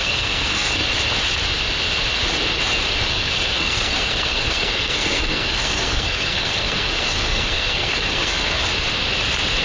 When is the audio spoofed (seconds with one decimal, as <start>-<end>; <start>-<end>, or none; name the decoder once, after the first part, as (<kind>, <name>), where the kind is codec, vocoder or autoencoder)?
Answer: 0.0-0.8 (codec, SNAC); 3.1-8.6